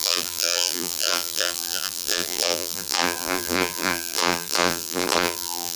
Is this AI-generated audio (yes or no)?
yes